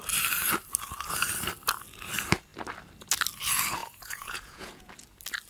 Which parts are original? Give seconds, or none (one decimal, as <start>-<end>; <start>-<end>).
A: 0.0-3.8; 4.9-5.5